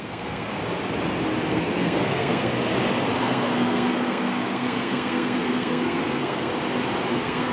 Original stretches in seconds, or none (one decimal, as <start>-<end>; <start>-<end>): 0.5-1.5; 2.5-3.2; 6.5-7.1